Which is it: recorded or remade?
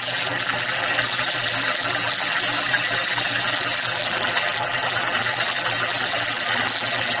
remade